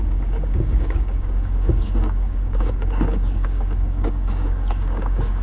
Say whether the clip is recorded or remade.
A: remade